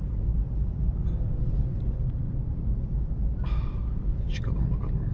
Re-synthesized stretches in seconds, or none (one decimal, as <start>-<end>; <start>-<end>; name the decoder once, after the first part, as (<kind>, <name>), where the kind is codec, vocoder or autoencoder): 2.5-3.2 (vocoder, BigVGAN v2)